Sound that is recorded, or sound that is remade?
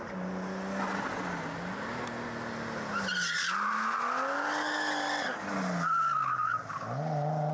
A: recorded